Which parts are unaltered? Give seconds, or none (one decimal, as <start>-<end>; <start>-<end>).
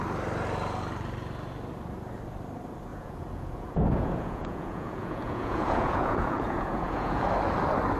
0.0-2.9; 7.2-8.0